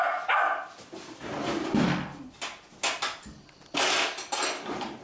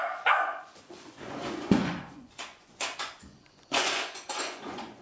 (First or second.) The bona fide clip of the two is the first